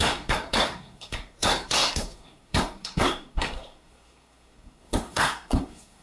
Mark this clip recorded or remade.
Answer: remade